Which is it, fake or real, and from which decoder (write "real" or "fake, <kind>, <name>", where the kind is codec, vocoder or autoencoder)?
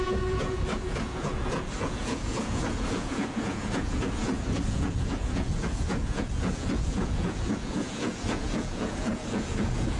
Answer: fake, vocoder, Vocos